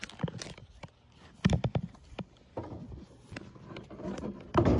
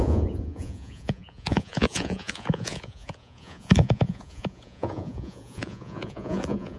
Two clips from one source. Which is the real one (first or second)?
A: first